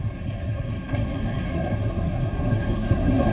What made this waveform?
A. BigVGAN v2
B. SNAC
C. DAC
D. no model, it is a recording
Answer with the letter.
B